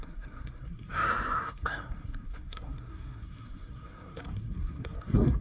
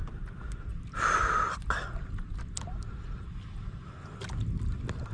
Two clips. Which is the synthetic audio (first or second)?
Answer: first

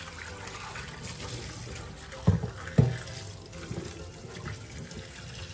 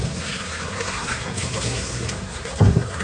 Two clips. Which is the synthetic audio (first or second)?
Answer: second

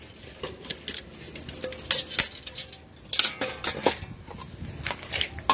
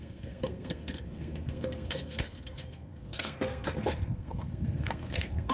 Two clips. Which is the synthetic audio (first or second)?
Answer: second